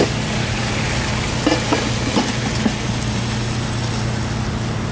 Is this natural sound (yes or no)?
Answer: yes